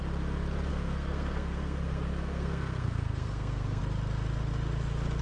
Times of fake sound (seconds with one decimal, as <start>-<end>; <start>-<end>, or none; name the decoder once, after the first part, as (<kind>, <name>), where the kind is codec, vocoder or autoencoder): 0.7-3.8 (codec, SNAC)